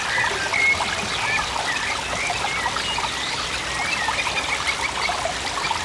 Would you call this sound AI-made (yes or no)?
no